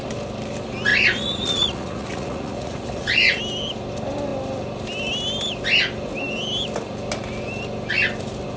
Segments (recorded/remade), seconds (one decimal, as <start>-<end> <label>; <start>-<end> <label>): 0.0-0.9 recorded; 0.9-3.4 remade; 3.4-8.6 recorded